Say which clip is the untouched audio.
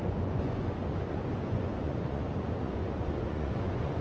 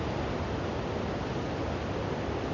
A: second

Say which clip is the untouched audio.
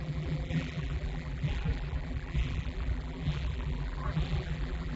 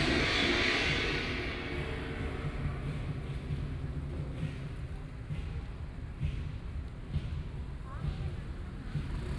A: second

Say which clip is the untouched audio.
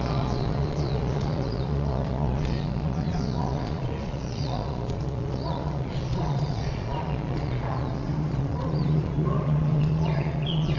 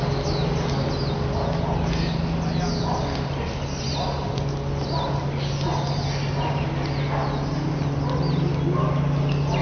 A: second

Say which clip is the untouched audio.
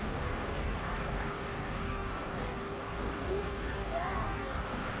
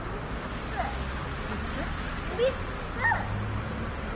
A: second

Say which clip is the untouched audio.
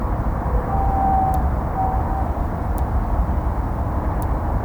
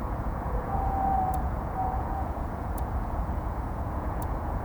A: first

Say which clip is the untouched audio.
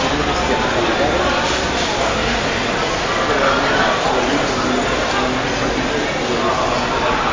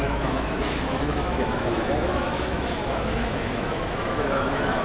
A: first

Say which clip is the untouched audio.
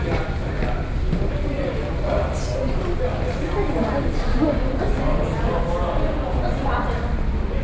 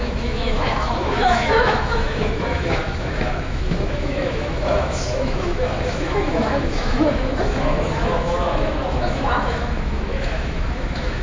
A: first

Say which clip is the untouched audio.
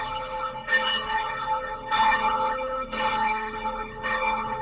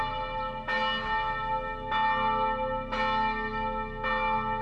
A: second